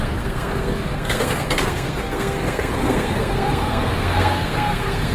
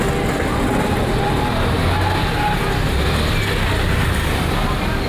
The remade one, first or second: first